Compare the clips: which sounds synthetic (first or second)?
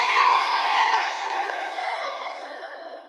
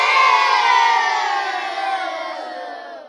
first